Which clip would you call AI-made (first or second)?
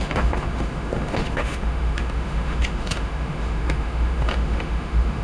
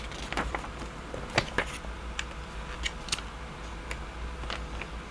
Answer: first